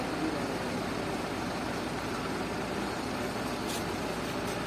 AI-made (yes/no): no